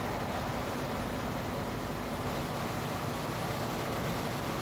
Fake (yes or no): no